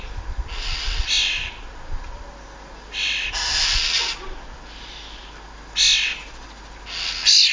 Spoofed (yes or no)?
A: no